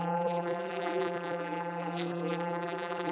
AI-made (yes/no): yes